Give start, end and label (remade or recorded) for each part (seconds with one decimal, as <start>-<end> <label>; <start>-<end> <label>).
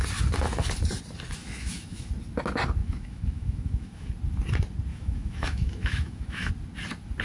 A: 0.0-1.4 recorded; 1.4-2.1 remade; 2.1-2.8 recorded; 2.8-4.1 remade; 4.1-4.9 recorded; 4.9-6.5 remade; 6.5-7.2 recorded